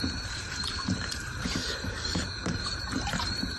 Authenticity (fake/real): fake